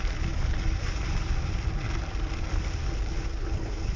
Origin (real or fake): real